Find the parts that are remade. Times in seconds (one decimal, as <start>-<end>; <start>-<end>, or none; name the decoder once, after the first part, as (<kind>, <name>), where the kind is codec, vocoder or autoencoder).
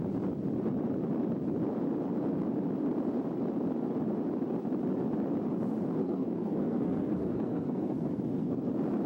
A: 6.0-8.7 (codec, SNAC)